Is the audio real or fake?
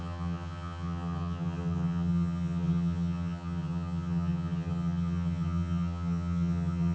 fake